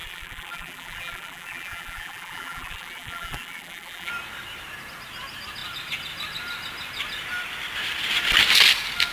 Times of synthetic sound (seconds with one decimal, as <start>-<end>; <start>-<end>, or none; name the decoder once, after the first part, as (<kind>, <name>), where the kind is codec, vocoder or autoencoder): 0.0-4.1 (vocoder, BigVGAN v2)